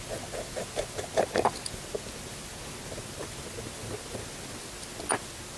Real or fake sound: real